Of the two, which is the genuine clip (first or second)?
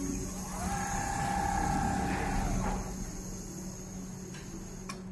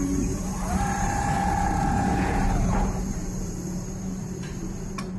first